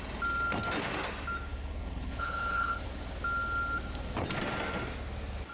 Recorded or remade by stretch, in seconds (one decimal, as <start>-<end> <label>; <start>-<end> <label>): 0.0-1.5 recorded; 1.5-2.9 remade; 2.9-5.5 recorded